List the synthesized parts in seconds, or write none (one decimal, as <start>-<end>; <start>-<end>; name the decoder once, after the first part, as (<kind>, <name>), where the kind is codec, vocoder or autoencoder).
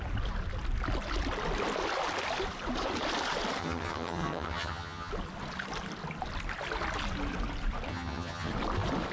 3.6-5.1 (vocoder, HiFi-GAN); 7.9-8.5